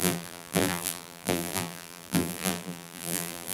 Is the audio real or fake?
fake